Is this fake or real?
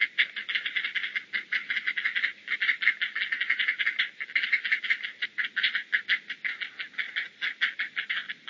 real